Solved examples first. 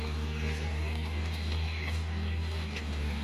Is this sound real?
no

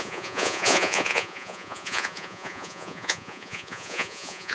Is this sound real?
no